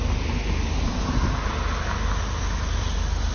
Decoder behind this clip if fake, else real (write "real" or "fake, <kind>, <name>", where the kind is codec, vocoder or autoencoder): real